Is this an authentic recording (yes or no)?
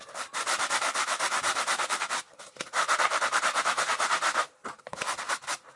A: no